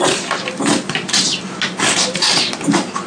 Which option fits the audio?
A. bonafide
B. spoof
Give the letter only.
A